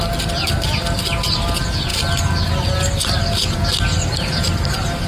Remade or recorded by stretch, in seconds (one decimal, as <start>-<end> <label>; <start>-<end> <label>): 0.0-5.1 recorded